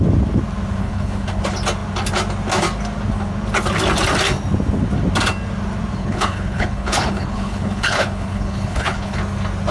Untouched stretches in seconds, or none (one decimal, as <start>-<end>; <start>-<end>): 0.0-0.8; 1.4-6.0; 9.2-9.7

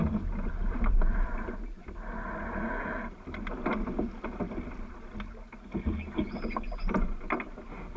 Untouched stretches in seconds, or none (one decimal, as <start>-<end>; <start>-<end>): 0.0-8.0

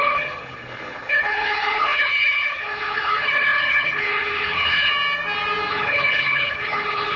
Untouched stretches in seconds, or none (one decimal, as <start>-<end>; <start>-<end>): 4.9-5.7

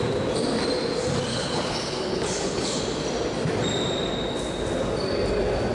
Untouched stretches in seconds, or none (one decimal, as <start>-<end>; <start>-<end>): 0.0-1.3; 2.8-5.7

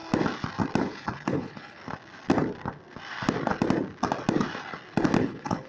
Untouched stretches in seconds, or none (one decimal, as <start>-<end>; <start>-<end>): 0.0-0.8; 1.8-5.2